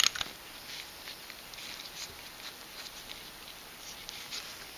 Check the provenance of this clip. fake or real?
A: real